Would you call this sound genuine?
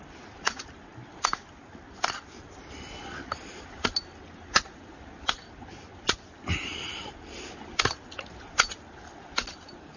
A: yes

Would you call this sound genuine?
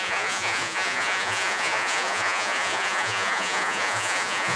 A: no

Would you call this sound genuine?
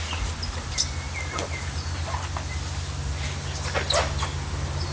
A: yes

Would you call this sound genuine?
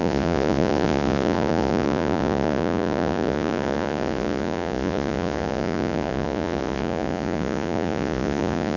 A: no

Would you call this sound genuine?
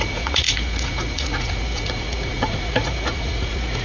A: no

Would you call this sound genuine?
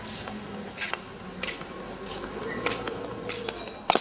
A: yes